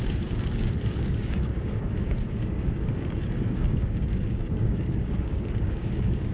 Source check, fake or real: fake